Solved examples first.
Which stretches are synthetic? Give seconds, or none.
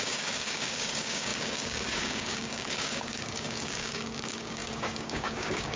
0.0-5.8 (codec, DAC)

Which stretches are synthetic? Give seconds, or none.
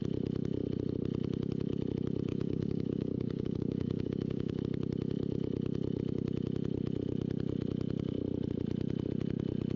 2.3-4.6 (codec, DAC)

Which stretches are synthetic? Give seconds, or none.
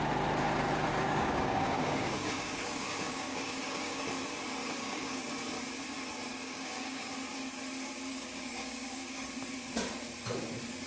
0.9-4.0 (codec, DAC); 4.6-5.2; 6.3-7.1; 8.1-9.3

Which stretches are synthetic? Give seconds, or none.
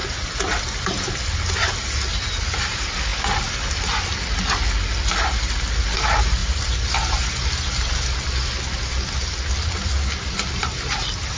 none